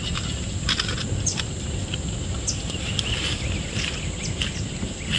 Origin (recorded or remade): recorded